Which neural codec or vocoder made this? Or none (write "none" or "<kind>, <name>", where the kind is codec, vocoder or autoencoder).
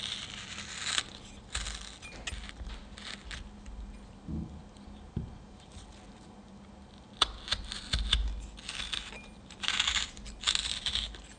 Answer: none